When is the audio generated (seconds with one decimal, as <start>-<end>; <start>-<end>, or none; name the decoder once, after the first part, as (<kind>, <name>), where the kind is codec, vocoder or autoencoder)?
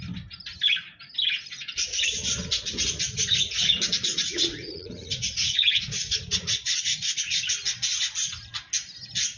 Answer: 4.1-7.5 (vocoder, Vocos)